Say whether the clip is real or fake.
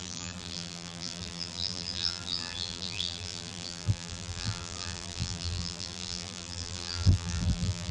fake